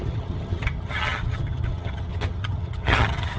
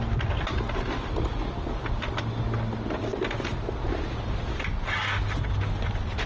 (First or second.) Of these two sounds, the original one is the second